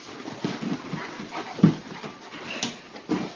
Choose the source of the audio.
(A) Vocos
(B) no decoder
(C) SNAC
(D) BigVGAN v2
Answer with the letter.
B